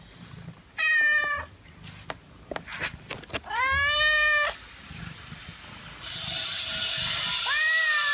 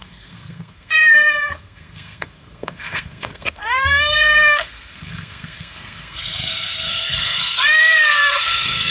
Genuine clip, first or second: first